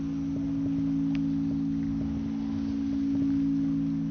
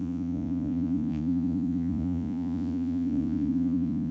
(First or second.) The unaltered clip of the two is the first